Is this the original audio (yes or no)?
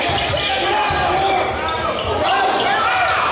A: yes